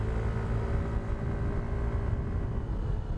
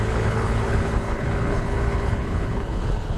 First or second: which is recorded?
first